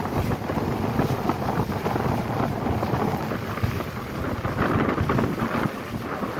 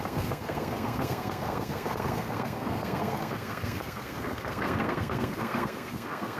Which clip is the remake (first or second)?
second